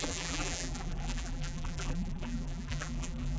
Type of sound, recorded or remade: remade